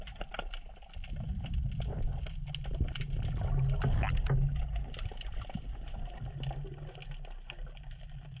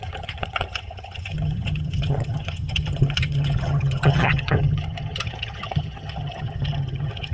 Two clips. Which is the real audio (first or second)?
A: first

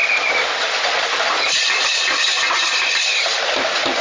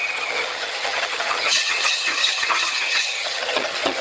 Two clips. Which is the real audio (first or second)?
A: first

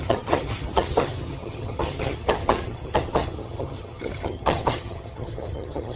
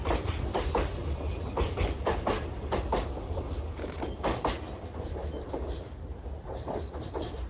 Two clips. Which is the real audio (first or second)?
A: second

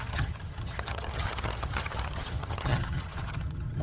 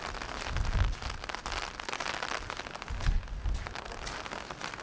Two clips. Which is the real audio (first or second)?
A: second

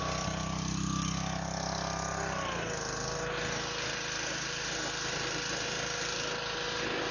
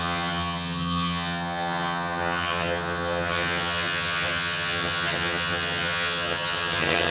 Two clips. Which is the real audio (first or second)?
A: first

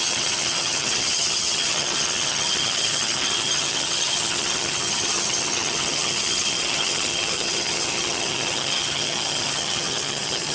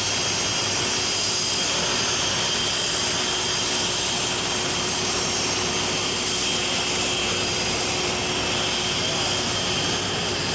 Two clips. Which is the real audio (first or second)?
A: second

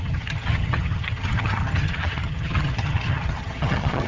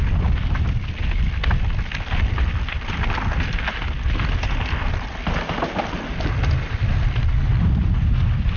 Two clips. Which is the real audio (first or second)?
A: second